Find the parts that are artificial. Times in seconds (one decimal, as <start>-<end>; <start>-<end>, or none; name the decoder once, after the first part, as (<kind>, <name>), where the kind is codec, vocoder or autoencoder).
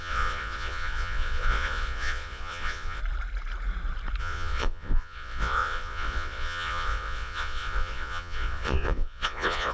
0.0-3.0 (vocoder, Vocos); 4.2-9.7